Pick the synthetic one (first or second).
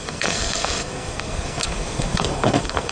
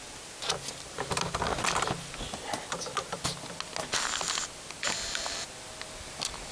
first